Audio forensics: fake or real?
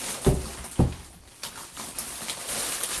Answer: real